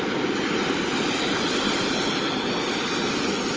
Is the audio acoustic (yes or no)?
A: yes